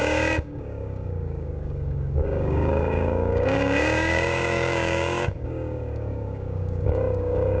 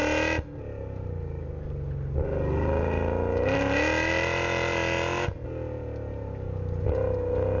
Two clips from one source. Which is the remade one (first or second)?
first